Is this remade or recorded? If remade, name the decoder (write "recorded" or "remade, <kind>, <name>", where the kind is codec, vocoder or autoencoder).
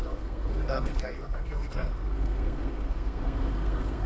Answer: remade, codec, SNAC